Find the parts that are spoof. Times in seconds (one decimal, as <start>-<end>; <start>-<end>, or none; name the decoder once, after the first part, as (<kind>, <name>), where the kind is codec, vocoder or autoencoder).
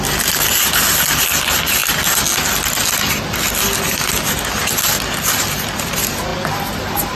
none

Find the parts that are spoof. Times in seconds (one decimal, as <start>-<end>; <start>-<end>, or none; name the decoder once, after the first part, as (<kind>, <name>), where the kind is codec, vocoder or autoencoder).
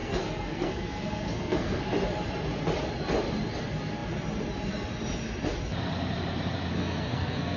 0.0-1.8 (codec, SNAC); 6.7-7.6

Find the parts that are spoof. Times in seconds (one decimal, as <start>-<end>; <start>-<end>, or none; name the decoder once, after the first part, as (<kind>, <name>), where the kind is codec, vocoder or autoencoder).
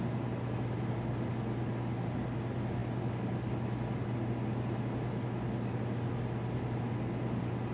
none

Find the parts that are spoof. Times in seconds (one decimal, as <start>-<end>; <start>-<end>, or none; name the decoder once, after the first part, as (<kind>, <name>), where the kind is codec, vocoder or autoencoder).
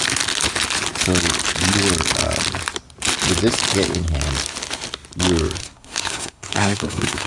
5.6-7.3 (codec, SNAC)